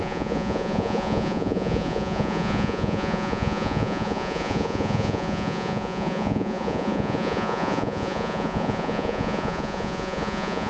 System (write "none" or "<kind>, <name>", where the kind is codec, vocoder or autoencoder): vocoder, Vocos